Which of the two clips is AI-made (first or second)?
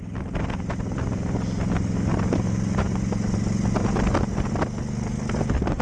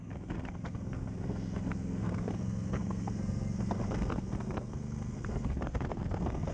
second